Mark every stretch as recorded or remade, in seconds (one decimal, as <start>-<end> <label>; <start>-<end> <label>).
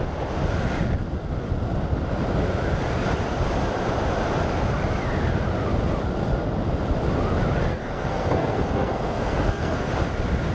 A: 0.0-7.7 recorded; 7.7-9.9 remade; 9.9-10.5 recorded